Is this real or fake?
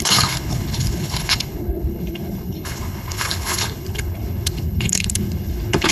fake